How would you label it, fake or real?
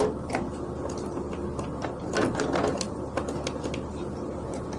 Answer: real